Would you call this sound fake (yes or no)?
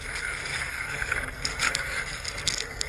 yes